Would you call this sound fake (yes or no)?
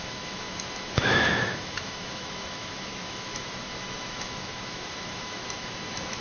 yes